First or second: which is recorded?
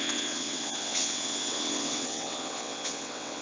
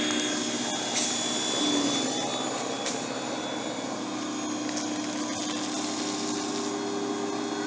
second